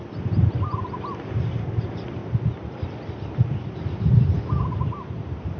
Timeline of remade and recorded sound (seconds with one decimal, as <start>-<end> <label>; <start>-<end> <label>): 0.0-5.6 recorded